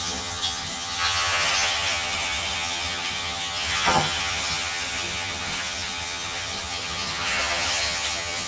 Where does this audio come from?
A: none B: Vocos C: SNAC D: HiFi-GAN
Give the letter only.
D